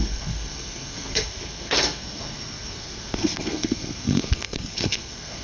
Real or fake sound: fake